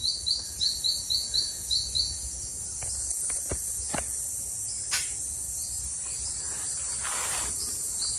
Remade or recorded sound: recorded